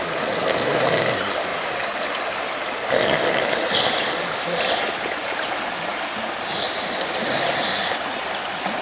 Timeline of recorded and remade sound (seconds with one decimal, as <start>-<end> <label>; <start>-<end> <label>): 0.0-8.8 recorded